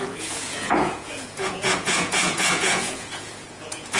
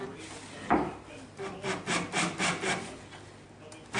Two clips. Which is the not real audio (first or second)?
first